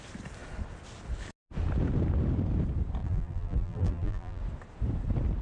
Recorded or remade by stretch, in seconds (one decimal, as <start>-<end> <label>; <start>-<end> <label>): 0.0-3.0 recorded; 3.0-4.4 remade; 4.4-5.4 recorded